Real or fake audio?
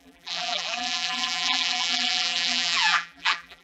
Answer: fake